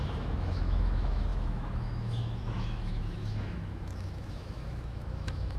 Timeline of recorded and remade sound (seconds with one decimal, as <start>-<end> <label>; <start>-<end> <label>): 0.0-5.6 remade

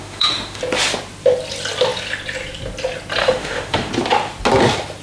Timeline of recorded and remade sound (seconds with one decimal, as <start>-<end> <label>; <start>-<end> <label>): 0.0-0.6 remade; 0.6-3.2 recorded; 3.2-3.9 remade; 3.9-5.0 recorded

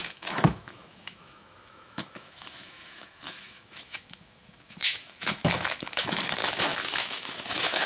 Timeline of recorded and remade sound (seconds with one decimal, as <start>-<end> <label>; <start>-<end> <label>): 0.0-7.9 remade

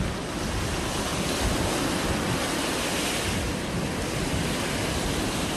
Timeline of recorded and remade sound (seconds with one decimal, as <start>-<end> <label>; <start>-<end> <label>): 0.0-5.6 recorded

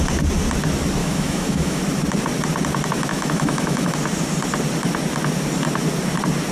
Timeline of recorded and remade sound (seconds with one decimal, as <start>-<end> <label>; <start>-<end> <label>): 0.0-1.0 recorded; 1.0-1.8 remade; 1.8-3.1 recorded; 3.1-3.9 remade; 3.9-6.5 recorded

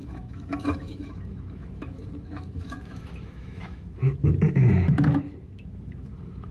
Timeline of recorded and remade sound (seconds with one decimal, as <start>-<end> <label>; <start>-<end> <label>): 0.0-6.5 remade